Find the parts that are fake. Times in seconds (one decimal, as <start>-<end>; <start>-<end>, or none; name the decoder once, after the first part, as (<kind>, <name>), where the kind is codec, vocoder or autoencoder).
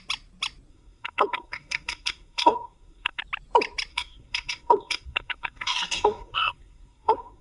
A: 0.7-3.2 (codec, SNAC); 3.9-7.4